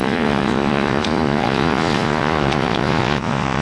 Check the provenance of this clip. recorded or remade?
remade